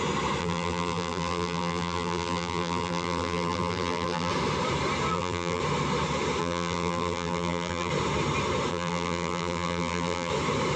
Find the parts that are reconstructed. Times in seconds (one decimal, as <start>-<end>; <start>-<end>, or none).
0.4-4.3; 5.1-5.6; 6.4-7.9; 8.7-10.3